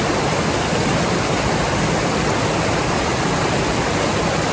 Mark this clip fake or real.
real